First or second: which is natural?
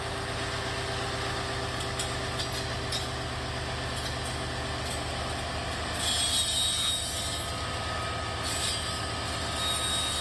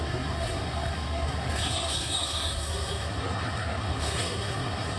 first